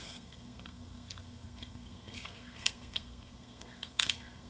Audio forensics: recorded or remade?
remade